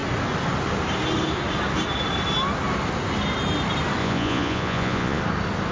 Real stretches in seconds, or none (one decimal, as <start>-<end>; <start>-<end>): 0.0-4.0; 5.2-5.7